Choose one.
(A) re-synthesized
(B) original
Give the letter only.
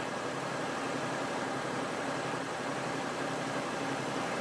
A